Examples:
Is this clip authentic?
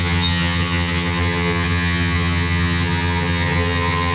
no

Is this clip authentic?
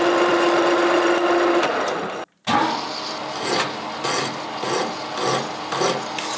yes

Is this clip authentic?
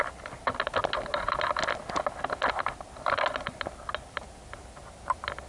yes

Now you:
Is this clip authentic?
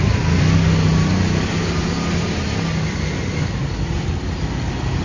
yes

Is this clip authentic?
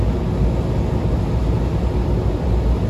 yes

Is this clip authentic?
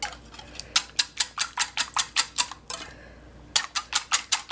yes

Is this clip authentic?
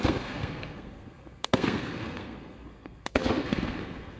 no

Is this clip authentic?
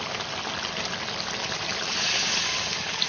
yes